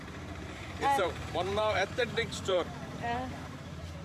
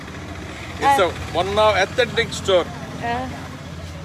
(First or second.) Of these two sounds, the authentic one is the second